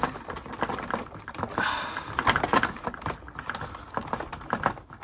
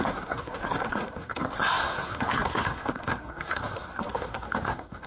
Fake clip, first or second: second